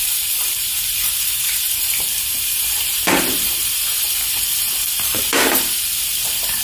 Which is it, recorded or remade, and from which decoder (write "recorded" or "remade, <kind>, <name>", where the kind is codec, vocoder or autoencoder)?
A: remade, vocoder, BigVGAN v2